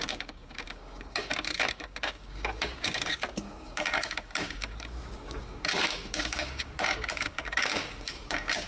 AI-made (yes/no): yes